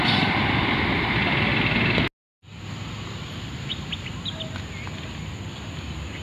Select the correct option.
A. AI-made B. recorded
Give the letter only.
B